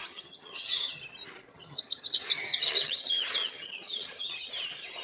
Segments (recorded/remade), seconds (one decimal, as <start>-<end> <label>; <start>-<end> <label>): 0.0-1.0 remade; 1.0-1.5 recorded; 1.5-4.5 remade; 4.5-5.0 recorded